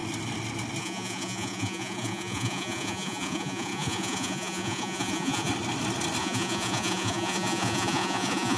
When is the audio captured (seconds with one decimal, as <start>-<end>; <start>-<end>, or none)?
0.0-0.8; 5.5-6.2